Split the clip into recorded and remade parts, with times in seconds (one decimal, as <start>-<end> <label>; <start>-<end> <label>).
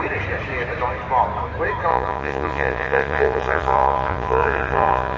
0.0-1.9 recorded; 1.9-5.2 remade